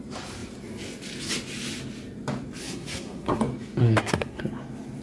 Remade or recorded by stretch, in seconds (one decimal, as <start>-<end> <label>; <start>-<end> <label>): 0.0-2.6 recorded; 2.6-3.4 remade; 3.4-3.8 recorded; 3.8-4.4 remade; 4.4-5.0 recorded